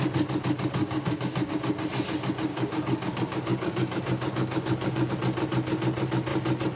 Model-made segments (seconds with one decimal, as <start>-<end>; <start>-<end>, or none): 0.8-1.5; 2.5-5.1